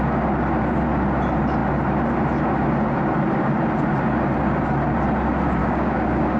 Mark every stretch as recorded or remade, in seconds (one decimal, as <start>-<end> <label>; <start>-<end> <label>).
0.0-5.6 recorded; 5.6-6.4 remade